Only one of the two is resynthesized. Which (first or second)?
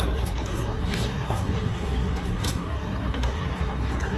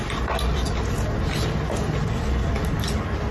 first